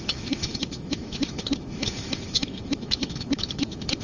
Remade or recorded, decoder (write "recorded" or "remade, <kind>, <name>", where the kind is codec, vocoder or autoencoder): remade, autoencoder, DAC-VAE